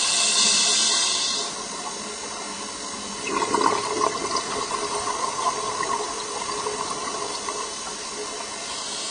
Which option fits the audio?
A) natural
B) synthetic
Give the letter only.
A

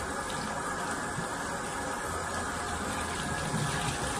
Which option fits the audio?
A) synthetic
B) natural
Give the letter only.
B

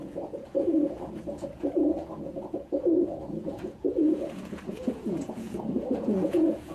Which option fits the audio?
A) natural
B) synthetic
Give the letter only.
B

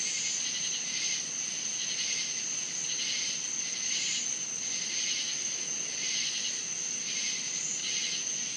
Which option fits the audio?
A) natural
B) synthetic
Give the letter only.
A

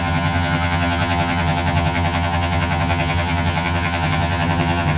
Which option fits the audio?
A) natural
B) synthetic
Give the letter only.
B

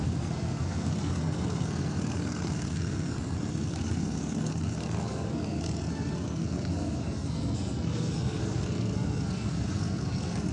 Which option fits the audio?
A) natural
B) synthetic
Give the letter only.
B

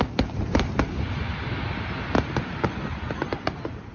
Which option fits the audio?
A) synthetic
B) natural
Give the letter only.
B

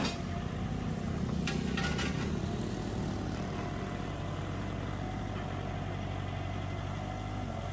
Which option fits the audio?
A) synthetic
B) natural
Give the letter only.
B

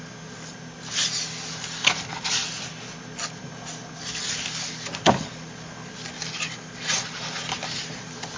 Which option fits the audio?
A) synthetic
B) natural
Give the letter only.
B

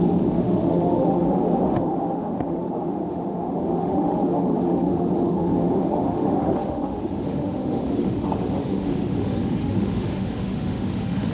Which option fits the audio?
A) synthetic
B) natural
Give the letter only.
A